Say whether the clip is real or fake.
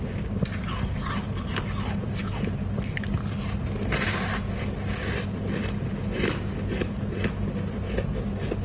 real